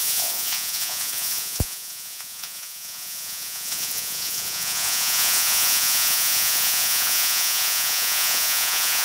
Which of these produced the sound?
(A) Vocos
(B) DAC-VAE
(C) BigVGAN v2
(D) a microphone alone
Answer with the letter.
A